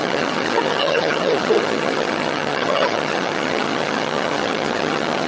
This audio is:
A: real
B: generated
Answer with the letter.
B